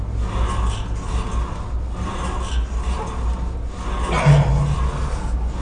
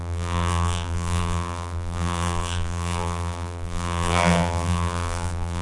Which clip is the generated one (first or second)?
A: second